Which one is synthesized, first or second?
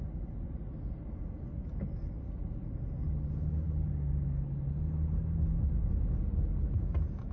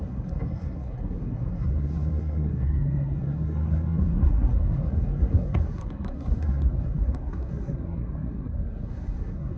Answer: second